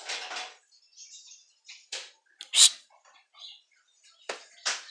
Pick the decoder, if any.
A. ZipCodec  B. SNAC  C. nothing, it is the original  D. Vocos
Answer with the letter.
C